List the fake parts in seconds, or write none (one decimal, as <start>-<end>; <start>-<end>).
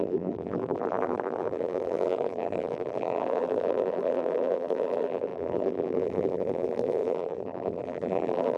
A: 0.0-8.6